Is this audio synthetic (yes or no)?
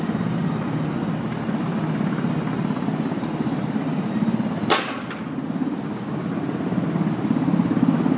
no